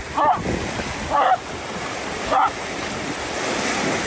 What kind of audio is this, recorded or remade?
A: recorded